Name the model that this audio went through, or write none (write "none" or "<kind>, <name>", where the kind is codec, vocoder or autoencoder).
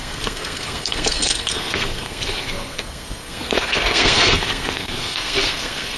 codec, SNAC